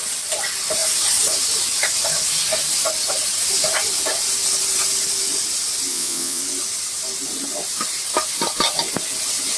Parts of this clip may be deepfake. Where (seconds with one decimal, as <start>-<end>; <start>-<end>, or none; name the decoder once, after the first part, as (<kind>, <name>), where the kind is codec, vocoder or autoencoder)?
5.9-6.4 (vocoder, Vocos)